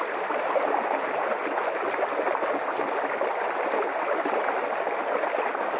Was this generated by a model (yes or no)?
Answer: no